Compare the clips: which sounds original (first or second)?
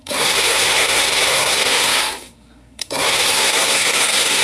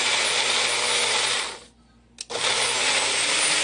second